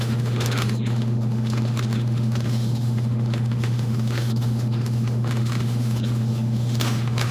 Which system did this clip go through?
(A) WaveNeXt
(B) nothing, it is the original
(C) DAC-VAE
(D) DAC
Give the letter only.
C